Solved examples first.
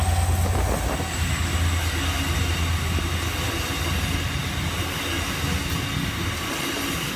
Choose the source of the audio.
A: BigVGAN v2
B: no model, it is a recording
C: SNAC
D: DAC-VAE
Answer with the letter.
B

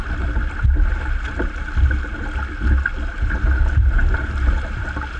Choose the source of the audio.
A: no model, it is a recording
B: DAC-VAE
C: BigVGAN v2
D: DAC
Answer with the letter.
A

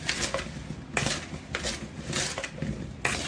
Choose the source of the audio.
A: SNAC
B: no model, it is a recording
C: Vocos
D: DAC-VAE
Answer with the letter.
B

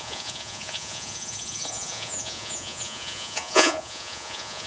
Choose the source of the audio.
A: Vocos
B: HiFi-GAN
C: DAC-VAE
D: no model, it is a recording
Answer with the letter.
A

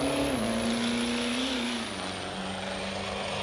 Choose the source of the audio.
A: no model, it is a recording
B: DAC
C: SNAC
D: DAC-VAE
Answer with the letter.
A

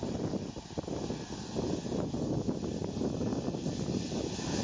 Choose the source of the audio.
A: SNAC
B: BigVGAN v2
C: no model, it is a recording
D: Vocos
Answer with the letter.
C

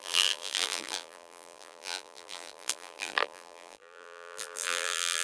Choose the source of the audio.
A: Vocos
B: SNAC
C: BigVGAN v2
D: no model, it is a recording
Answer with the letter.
C